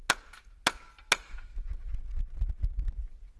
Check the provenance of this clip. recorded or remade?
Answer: recorded